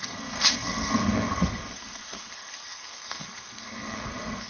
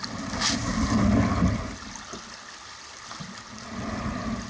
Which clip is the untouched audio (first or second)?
second